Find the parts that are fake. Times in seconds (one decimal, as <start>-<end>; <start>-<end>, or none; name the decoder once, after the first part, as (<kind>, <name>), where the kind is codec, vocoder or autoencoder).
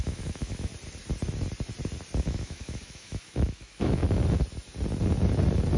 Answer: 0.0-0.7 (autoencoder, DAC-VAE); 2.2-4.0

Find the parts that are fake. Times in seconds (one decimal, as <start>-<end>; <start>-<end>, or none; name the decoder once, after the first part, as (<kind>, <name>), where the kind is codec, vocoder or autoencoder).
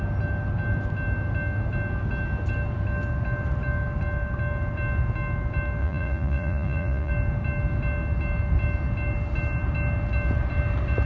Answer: 5.8-7.1 (vocoder, Vocos)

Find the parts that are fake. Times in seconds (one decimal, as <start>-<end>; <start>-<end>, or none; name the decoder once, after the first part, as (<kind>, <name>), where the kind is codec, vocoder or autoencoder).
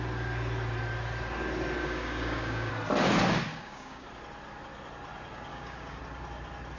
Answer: 1.8-2.7 (codec, DAC); 3.5-4.1; 5.5-6.0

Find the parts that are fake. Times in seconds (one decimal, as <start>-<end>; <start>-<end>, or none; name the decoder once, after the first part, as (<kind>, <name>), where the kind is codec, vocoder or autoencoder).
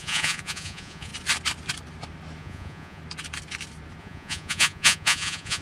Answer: 0.0-1.1 (vocoder, Vocos); 2.4-3.0; 4.0-5.6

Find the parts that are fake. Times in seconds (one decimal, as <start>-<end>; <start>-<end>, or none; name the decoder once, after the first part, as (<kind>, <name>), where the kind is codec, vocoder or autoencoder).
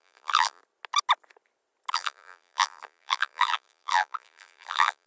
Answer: 0.0-0.6 (vocoder, BigVGAN v2); 1.9-5.1